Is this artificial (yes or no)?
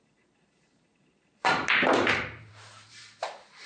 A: yes